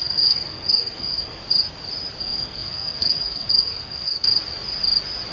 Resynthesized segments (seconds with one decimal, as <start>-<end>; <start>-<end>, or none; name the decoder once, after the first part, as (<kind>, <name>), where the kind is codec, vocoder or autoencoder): 0.0-1.4 (codec, SNAC); 2.2-4.3